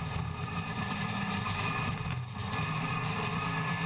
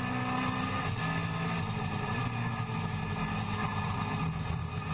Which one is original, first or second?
second